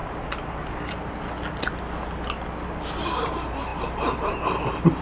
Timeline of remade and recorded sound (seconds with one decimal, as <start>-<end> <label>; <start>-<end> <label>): 0.0-5.0 recorded